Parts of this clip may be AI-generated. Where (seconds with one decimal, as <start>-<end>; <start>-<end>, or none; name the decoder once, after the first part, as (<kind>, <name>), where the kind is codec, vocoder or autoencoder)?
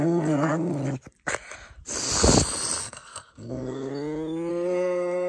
0.0-0.7 (codec, SNAC); 2.8-3.9; 4.5-5.3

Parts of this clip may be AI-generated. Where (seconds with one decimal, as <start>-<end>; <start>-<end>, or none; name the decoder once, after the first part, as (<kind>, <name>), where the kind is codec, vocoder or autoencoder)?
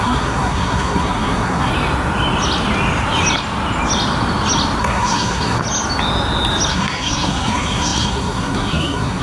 0.0-1.7 (codec, SNAC); 4.8-5.6; 6.7-9.2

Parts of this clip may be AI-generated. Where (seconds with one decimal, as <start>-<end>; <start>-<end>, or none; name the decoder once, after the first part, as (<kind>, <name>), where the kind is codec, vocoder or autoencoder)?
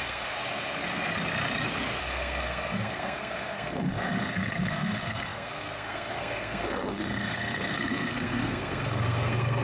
0.0-0.4 (codec, SNAC); 2.0-9.6